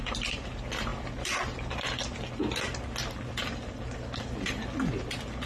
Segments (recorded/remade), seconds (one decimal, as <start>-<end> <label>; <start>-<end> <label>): 0.0-5.5 recorded